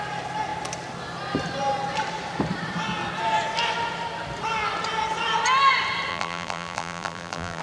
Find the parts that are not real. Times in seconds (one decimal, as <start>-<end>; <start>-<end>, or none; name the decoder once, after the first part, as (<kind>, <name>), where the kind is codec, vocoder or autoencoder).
6.1-7.6 (vocoder, BigVGAN v2)

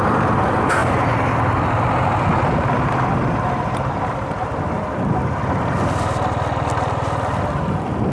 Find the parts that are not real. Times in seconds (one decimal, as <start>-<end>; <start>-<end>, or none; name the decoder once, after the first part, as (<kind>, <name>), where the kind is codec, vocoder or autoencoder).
none

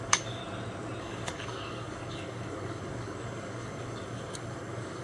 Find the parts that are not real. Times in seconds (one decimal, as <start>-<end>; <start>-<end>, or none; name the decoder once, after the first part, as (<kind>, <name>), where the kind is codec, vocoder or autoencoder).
0.0-0.4 (codec, DAC); 1.0-5.0